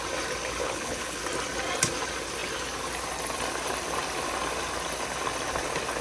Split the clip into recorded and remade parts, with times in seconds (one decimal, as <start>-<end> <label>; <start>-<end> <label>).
0.0-0.6 recorded; 0.6-1.2 remade; 1.2-6.0 recorded